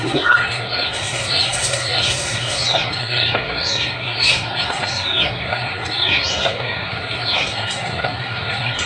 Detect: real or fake fake